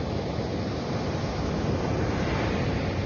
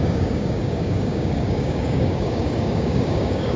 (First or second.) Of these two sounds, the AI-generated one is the second